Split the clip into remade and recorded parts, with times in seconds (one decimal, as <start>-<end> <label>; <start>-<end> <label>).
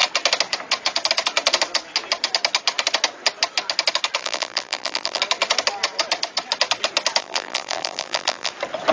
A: 0.0-4.2 recorded; 4.2-5.2 remade; 5.2-7.2 recorded; 7.2-8.5 remade; 8.5-8.9 recorded